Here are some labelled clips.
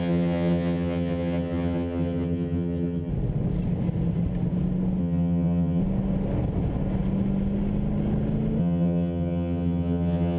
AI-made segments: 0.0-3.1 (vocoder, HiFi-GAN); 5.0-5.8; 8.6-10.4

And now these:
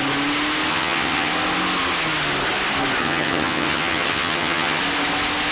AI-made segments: 0.7-1.3 (vocoder, HiFi-GAN); 3.0-4.8

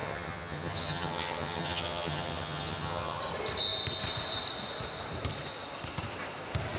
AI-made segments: 0.0-3.2 (vocoder, HiFi-GAN)

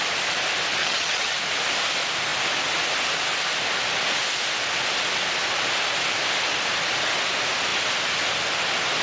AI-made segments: 0.8-1.4 (vocoder, HiFi-GAN)

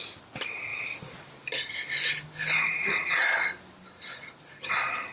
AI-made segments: none

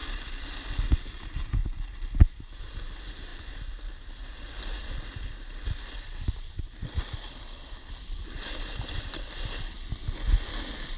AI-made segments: none

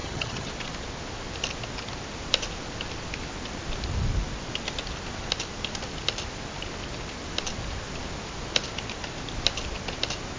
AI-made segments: 0.0-0.5 (vocoder, HiFi-GAN)

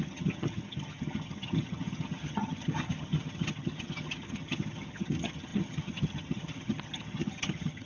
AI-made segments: 0.0-7.9 (vocoder, HiFi-GAN)